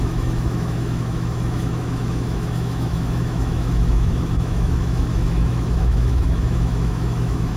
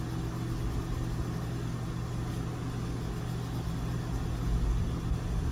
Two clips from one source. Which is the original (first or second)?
second